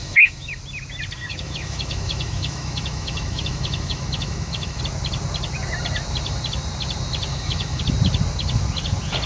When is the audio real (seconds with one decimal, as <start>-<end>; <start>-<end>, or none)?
0.6-1.2; 4.8-7.3; 7.8-9.3